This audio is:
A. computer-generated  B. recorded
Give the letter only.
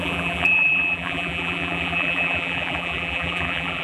A